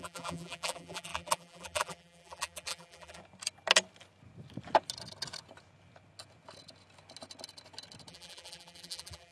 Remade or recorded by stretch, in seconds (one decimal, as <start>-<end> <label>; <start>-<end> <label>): 0.0-3.2 remade; 3.2-8.1 recorded; 8.1-9.3 remade